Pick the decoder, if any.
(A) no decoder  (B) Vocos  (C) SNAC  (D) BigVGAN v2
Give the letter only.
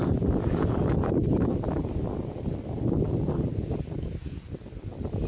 A